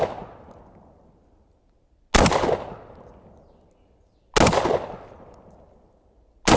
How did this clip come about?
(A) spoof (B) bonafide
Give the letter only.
B